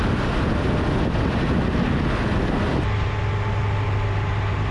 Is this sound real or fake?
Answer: real